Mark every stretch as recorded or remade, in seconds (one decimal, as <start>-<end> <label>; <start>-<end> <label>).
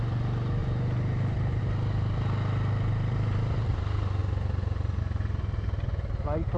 0.0-0.6 recorded; 0.6-1.6 remade; 1.6-2.9 recorded; 2.9-3.7 remade; 3.7-6.6 recorded